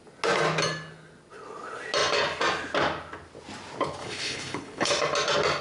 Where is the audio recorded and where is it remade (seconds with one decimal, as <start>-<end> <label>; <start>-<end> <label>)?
0.0-4.0 recorded; 4.0-4.9 remade; 4.9-5.6 recorded